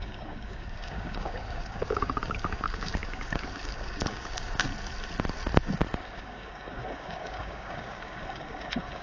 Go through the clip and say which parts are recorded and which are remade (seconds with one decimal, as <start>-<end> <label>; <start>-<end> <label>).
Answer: 0.0-4.7 remade; 4.7-6.0 recorded; 6.0-9.0 remade